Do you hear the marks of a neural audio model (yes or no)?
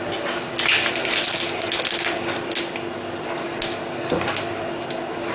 no